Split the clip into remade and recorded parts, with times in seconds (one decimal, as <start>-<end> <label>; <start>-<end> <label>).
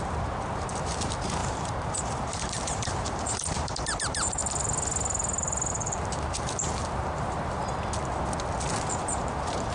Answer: 0.0-4.4 remade; 4.4-5.7 recorded; 5.7-7.6 remade; 7.6-9.1 recorded; 9.1-9.7 remade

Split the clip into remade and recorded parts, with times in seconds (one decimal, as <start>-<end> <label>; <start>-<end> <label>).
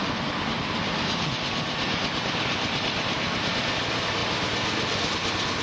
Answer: 0.0-5.6 recorded